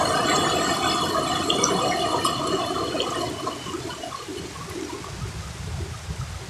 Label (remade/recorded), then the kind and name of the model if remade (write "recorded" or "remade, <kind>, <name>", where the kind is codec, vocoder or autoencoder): recorded